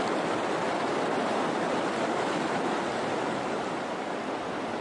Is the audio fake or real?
real